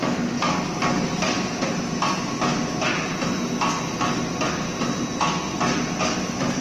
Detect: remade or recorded recorded